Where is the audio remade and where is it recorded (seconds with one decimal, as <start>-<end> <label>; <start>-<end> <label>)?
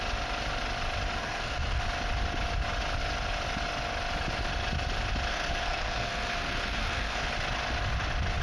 0.0-1.2 recorded; 1.2-1.8 remade; 1.8-5.3 recorded; 5.3-7.3 remade; 7.3-8.4 recorded